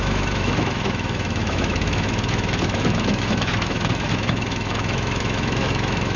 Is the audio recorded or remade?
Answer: remade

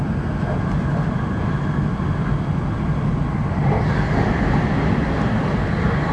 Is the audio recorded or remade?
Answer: recorded